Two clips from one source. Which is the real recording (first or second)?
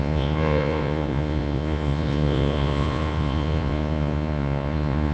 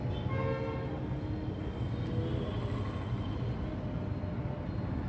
second